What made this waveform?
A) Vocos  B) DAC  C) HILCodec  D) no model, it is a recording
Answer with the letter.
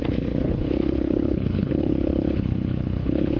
C